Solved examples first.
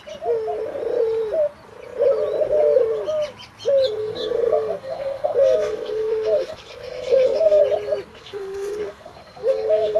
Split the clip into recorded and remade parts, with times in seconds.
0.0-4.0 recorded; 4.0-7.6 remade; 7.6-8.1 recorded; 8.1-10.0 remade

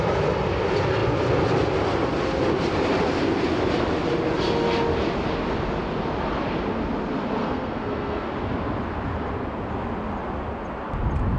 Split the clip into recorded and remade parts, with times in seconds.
0.0-7.4 recorded; 7.4-8.3 remade; 8.3-11.4 recorded

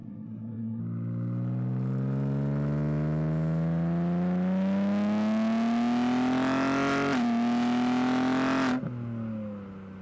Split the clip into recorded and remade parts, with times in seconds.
0.0-0.8 remade; 0.8-10.0 recorded

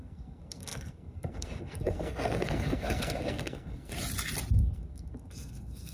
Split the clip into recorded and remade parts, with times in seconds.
0.0-3.9 remade; 3.9-4.5 recorded; 4.5-5.9 remade

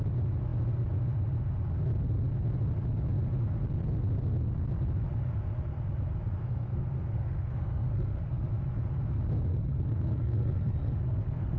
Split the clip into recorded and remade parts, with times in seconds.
0.0-6.4 recorded; 6.4-8.5 remade; 8.5-9.5 recorded; 9.5-11.6 remade

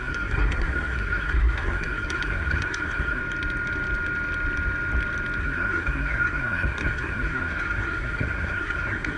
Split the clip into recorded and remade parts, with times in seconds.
0.0-3.2 remade; 3.2-5.4 recorded; 5.4-9.2 remade

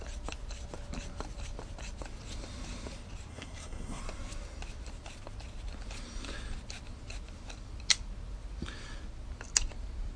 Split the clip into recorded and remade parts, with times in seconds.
0.0-3.3 recorded; 3.3-4.0 remade; 4.0-10.2 recorded